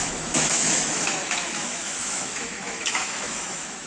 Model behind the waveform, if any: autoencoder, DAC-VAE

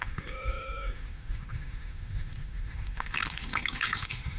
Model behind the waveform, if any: autoencoder, DAC-VAE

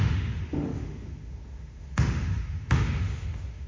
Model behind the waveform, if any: autoencoder, DAC-VAE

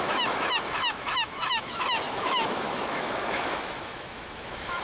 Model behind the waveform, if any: autoencoder, DAC-VAE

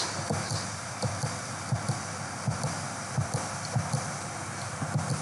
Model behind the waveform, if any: none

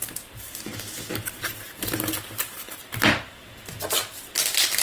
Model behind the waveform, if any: none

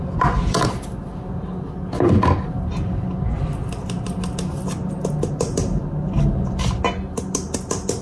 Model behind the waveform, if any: none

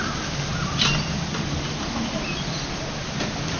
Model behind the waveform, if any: none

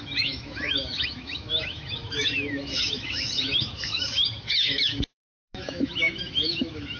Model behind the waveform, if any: autoencoder, DAC-VAE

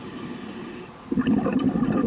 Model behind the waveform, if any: none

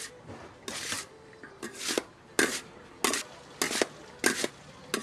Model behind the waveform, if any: none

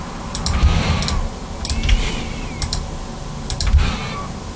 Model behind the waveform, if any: none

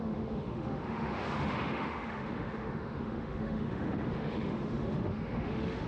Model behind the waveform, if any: autoencoder, DAC-VAE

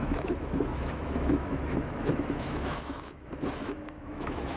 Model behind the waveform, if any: autoencoder, DAC-VAE